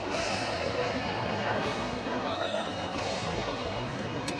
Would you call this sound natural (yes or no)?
no